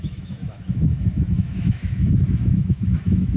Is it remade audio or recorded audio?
remade